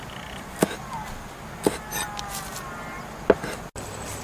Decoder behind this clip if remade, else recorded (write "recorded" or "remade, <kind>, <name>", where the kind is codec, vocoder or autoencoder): recorded